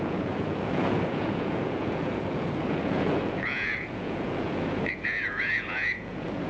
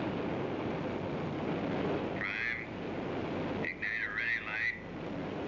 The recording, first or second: second